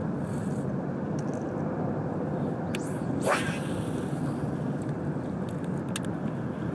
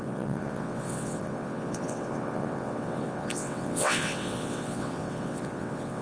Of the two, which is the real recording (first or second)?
first